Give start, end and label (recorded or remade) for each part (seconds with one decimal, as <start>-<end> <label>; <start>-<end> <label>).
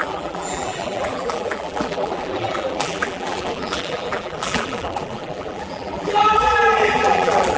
0.0-7.6 remade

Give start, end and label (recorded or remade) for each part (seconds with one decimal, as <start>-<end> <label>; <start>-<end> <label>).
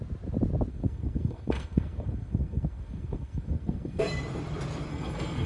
0.0-0.7 recorded; 0.7-4.0 remade; 4.0-4.9 recorded; 4.9-5.5 remade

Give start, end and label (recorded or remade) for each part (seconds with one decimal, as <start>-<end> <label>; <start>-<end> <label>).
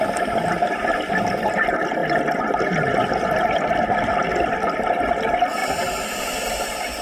0.0-7.0 recorded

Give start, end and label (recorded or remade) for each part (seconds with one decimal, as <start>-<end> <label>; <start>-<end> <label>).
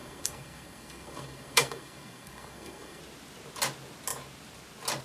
0.0-3.0 remade; 3.0-5.0 recorded